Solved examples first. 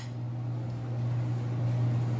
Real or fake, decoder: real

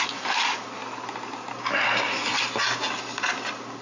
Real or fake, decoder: real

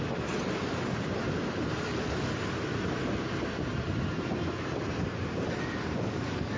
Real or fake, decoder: real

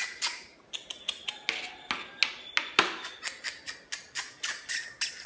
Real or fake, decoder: real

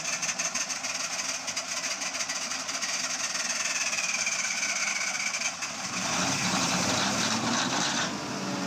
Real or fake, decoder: real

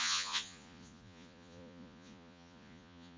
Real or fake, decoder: fake, vocoder, Vocos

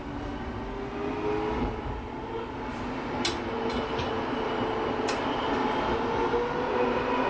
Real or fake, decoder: real